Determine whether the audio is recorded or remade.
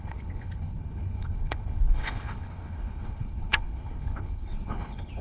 remade